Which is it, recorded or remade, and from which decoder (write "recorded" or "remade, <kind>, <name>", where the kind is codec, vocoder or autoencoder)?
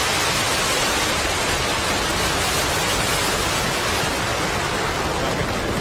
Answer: recorded